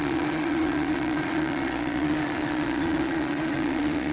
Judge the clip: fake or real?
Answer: fake